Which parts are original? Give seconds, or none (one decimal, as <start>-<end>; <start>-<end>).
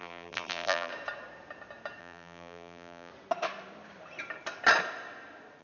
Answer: 0.9-2.0; 3.1-5.6